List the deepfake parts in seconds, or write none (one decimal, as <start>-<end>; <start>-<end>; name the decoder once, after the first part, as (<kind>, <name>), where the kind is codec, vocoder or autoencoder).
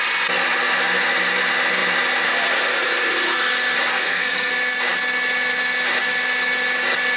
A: 3.9-4.5 (codec, SNAC)